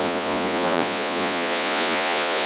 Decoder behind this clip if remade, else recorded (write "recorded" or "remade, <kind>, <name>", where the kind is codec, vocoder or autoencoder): remade, vocoder, Vocos